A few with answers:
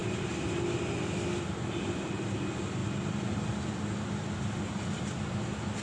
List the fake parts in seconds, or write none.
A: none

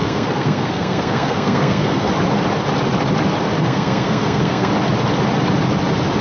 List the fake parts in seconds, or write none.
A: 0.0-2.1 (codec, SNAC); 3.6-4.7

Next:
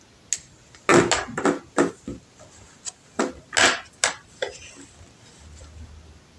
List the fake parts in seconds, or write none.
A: none